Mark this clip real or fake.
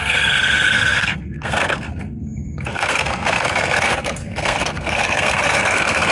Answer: fake